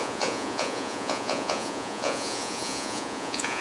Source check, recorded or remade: remade